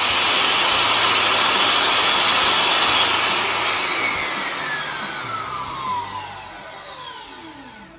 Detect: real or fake real